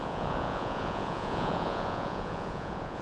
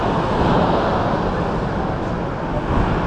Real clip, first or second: second